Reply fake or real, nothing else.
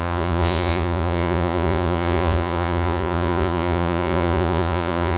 fake